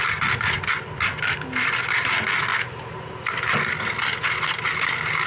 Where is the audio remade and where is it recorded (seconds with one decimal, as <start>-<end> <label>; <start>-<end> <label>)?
0.0-5.3 recorded